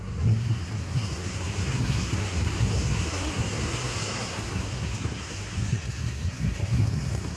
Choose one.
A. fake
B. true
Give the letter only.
A